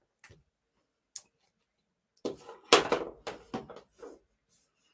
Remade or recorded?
recorded